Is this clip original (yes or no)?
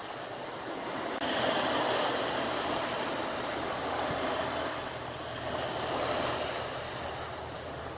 yes